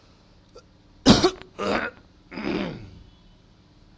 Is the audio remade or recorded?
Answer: recorded